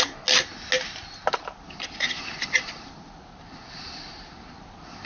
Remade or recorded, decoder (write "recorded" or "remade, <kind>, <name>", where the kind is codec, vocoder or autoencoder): recorded